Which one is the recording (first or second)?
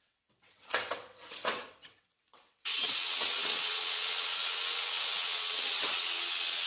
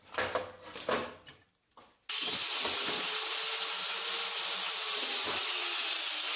second